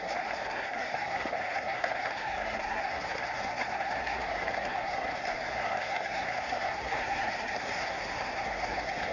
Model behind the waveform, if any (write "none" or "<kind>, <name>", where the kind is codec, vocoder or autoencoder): codec, SNAC